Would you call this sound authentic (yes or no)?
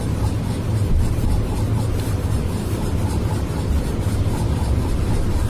no